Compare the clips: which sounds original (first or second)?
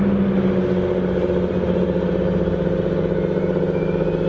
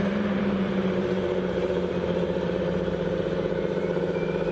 first